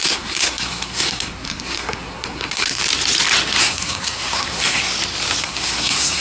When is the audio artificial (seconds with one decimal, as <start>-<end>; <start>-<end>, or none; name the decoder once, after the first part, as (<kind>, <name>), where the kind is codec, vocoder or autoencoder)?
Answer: 0.0-2.8 (codec, SNAC); 3.6-4.8; 5.4-6.2